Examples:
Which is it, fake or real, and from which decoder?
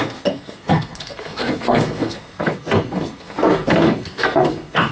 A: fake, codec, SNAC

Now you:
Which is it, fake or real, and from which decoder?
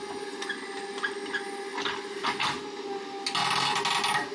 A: real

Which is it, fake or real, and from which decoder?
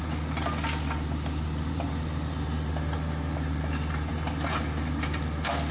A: real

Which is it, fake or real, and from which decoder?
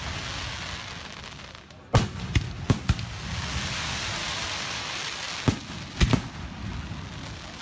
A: real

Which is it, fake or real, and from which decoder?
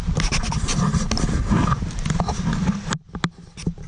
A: real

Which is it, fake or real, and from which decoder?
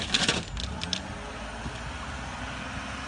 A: real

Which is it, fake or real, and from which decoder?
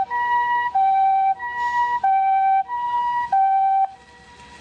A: real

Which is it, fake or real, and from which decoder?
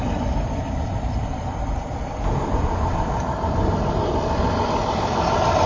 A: fake, vocoder, BigVGAN v2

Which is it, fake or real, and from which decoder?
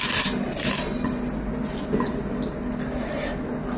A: real